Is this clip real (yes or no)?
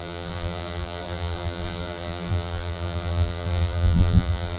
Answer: no